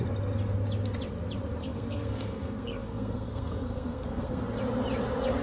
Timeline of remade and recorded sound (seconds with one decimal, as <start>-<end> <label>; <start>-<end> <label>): 0.0-1.6 recorded; 1.6-4.4 remade; 4.4-5.4 recorded